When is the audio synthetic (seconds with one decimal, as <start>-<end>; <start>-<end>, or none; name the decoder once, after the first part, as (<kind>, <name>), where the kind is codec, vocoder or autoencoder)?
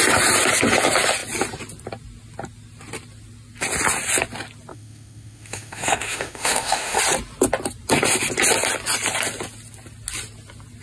4.7-7.0 (autoencoder, DAC-VAE)